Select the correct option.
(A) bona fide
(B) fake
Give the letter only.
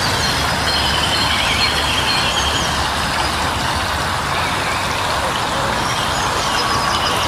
A